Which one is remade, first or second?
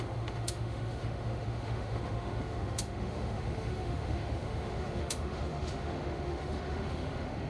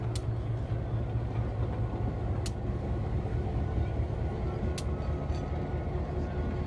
first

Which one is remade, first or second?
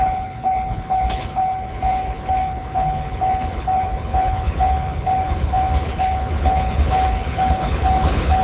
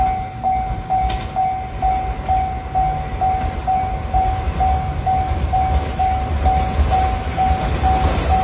first